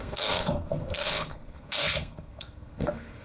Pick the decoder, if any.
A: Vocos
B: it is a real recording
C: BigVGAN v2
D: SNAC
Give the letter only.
D